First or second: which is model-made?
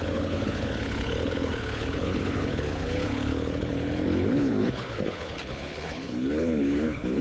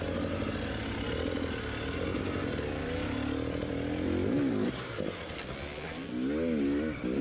first